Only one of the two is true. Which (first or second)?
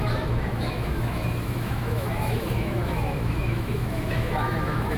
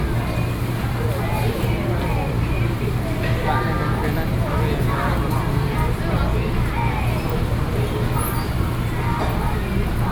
second